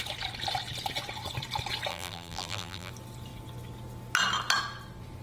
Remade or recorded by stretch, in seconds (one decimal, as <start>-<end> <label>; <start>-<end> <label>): 0.0-1.9 recorded; 1.9-2.9 remade; 2.9-5.2 recorded